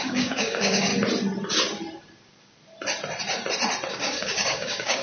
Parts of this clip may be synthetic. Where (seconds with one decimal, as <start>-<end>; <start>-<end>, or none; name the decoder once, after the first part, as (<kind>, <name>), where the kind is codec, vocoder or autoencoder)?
0.0-0.9 (codec, DAC); 3.9-5.0